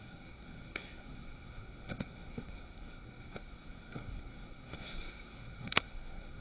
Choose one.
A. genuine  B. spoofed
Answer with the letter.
B